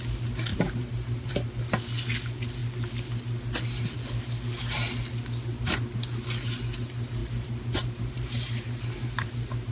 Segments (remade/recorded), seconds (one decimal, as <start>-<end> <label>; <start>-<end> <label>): 0.0-0.5 recorded; 0.5-1.3 remade; 1.3-7.2 recorded; 7.2-9.7 remade